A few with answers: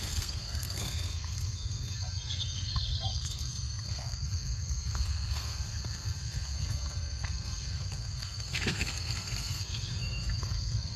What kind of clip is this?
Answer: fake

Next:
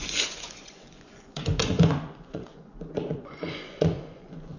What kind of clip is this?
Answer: fake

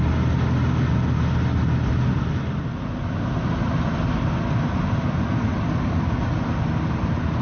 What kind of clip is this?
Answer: real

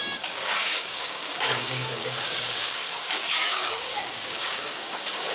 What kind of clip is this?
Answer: fake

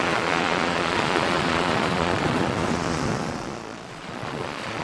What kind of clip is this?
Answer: fake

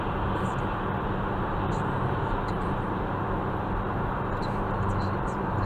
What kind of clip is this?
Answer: fake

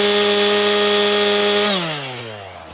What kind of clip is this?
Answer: real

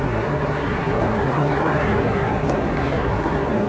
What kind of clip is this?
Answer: fake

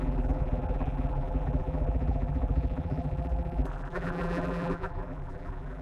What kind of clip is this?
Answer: fake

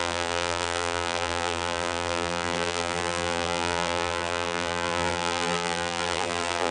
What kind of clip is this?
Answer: fake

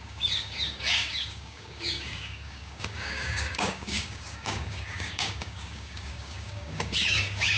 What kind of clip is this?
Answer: fake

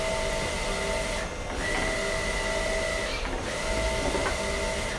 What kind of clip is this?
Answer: real